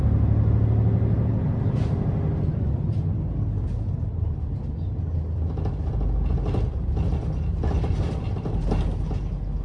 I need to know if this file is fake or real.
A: real